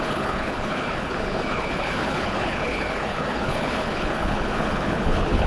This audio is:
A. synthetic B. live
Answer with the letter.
A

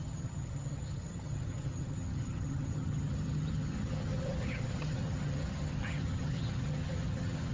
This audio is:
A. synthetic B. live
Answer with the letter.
A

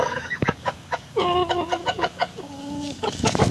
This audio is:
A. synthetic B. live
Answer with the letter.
A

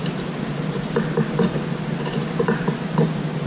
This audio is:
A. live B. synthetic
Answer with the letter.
A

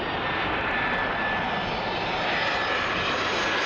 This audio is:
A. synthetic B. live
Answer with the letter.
B